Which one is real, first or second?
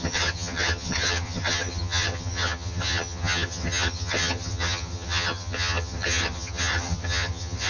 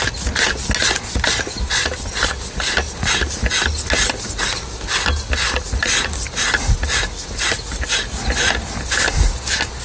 second